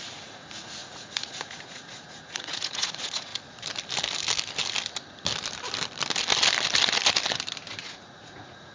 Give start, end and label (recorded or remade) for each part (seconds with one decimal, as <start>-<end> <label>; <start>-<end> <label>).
0.0-3.3 remade; 3.3-7.8 recorded; 7.8-8.7 remade

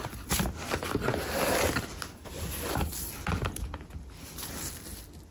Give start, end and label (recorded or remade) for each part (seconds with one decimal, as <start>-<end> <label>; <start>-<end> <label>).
0.0-5.3 recorded

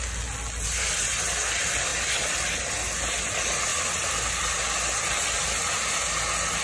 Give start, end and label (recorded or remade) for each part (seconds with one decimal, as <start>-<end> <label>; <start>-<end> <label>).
0.0-6.6 recorded

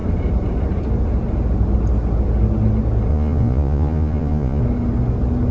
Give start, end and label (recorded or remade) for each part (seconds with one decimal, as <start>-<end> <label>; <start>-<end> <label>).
0.0-3.1 recorded; 3.1-4.6 remade; 4.6-5.5 recorded

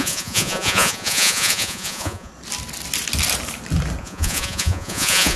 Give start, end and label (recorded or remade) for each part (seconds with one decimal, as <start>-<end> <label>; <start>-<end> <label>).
0.0-2.3 remade; 2.3-4.0 recorded; 4.0-5.4 remade

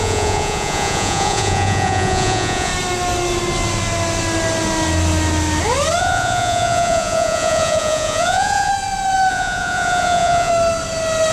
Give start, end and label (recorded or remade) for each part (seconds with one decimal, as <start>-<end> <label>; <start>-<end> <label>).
0.0-2.7 remade; 2.7-6.0 recorded; 6.0-8.7 remade; 8.7-9.3 recorded; 9.3-10.5 remade; 10.5-11.3 recorded